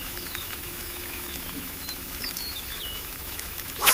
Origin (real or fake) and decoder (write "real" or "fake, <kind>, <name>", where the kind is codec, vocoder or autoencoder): fake, autoencoder, DAC-VAE